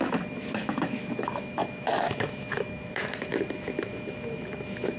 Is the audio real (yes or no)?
no